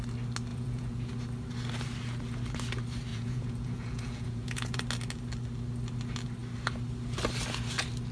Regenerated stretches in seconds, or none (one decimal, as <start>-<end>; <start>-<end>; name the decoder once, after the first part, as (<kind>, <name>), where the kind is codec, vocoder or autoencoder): 0.5-1.1 (vocoder, Vocos); 3.1-4.8